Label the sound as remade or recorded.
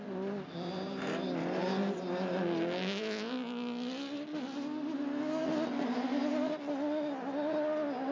recorded